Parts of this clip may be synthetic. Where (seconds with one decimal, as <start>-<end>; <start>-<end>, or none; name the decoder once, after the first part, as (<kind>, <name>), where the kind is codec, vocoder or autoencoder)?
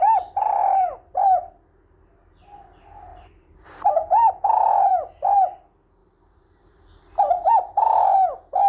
0.6-1.5 (vocoder, BigVGAN v2); 3.1-4.3; 6.0-7.5